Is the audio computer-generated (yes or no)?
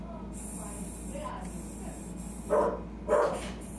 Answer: no